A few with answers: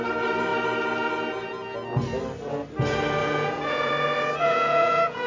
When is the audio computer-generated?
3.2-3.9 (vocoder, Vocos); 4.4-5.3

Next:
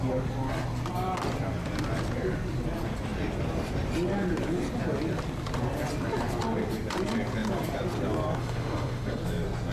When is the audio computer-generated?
8.4-9.2 (autoencoder, DAC-VAE)

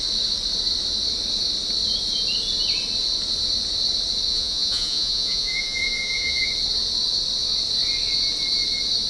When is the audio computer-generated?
4.3-6.5 (vocoder, Vocos)

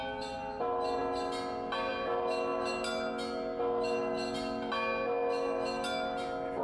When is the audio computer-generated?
none